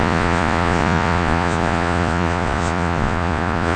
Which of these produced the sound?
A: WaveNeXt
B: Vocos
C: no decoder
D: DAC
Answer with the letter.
B